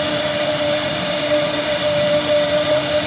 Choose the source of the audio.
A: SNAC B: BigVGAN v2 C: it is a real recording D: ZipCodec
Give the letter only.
B